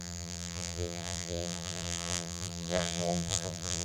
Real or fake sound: fake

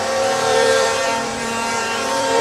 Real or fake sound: fake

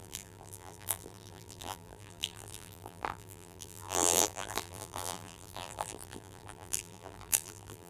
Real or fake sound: fake